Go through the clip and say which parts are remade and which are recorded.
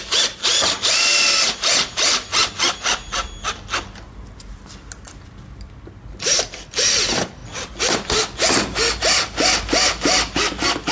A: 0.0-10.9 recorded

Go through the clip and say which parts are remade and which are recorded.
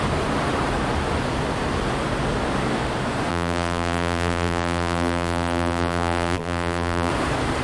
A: 0.0-3.3 recorded; 3.3-7.1 remade; 7.1-7.6 recorded